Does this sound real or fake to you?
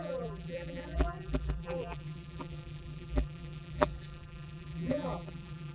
fake